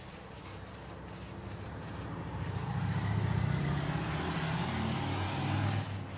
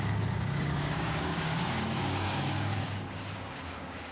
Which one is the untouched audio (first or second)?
first